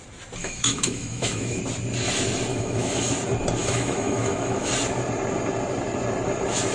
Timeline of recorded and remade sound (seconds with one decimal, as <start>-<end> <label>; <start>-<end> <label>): 0.0-0.4 recorded; 0.4-1.6 remade; 1.6-2.5 recorded; 2.5-3.1 remade; 3.1-3.6 recorded; 3.6-4.7 remade; 4.7-6.7 recorded

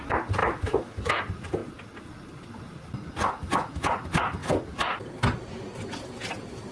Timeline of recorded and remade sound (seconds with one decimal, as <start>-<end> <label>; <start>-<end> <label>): 0.0-0.4 recorded; 0.4-1.2 remade; 1.2-6.7 recorded

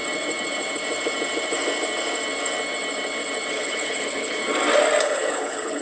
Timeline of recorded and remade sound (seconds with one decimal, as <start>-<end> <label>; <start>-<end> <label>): 0.0-3.5 recorded; 3.5-4.4 remade; 4.4-5.0 recorded; 5.0-5.8 remade

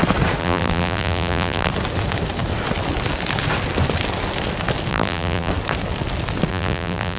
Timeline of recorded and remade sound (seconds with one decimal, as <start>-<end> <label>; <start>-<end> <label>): 0.0-0.4 recorded; 0.4-1.7 remade; 1.7-4.9 recorded; 4.9-5.5 remade; 5.5-6.5 recorded; 6.5-7.2 remade

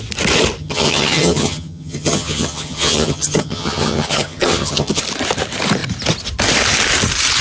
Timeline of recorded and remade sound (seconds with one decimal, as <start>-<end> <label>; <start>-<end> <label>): 0.0-0.6 recorded; 0.6-5.0 remade; 5.0-7.4 recorded